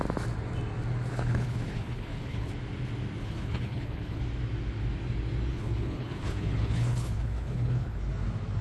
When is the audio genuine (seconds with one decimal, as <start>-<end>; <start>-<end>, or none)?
0.0-1.1; 2.5-3.2; 4.2-5.5; 8.0-8.6